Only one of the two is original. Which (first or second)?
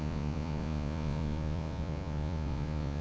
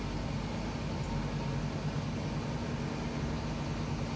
second